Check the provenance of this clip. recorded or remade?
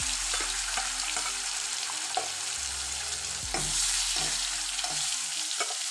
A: recorded